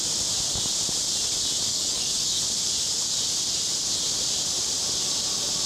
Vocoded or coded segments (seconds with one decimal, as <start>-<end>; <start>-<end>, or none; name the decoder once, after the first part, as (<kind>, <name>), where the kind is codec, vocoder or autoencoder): 1.7-2.4 (codec, DAC)